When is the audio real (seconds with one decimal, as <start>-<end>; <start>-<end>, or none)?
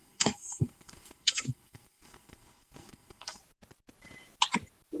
3.4-5.0